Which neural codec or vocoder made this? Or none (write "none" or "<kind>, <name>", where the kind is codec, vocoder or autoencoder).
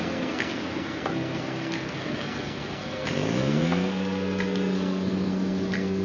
codec, SNAC